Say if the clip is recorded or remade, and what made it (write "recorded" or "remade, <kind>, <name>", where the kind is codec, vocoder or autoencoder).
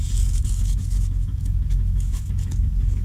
remade, codec, DAC